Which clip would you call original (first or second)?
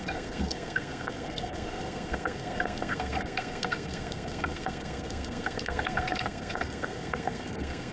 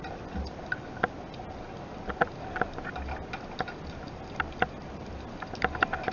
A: second